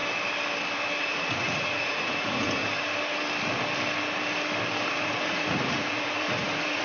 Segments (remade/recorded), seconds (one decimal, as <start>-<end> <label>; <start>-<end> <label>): 0.0-1.0 recorded; 1.0-2.6 remade; 2.6-4.9 recorded; 4.9-6.8 remade